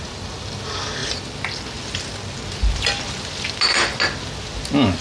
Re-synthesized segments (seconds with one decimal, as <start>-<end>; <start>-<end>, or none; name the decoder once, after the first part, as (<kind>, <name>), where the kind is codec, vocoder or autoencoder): 1.0-4.0 (vocoder, BigVGAN v2)